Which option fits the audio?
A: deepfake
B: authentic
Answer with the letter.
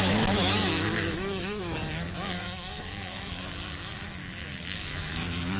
A